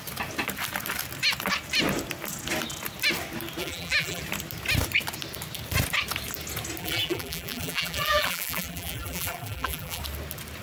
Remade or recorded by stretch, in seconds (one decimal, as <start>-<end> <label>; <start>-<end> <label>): 0.0-3.6 recorded; 3.6-4.2 remade; 4.2-6.8 recorded; 6.8-10.0 remade; 10.0-10.6 recorded